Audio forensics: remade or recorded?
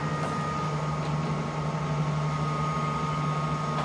recorded